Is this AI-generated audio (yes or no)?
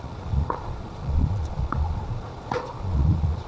yes